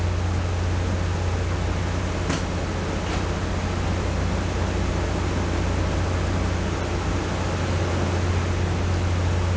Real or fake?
real